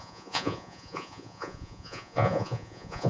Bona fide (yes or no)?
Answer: no